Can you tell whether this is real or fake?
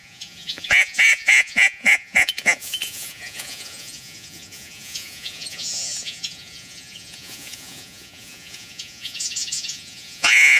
fake